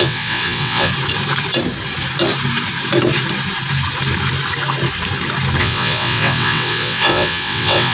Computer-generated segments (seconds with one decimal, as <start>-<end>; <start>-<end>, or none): 0.0-0.9; 5.6-7.9